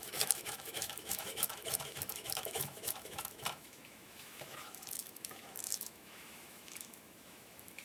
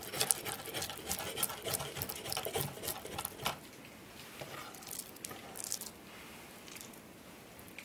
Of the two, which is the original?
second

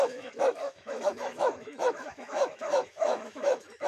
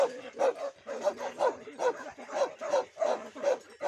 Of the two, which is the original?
second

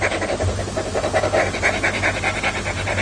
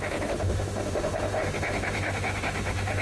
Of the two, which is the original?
first